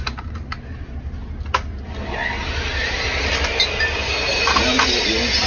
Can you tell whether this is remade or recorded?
recorded